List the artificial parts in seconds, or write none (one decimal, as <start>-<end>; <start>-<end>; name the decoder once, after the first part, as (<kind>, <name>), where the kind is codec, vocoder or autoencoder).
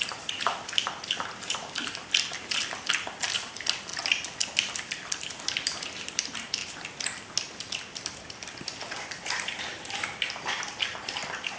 0.0-3.9 (vocoder, BigVGAN v2); 4.8-6.6; 8.0-11.6